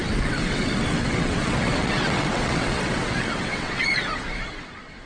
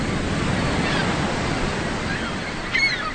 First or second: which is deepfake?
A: first